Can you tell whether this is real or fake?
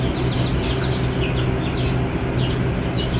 real